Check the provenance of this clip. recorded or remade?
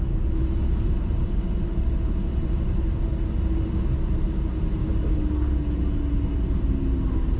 recorded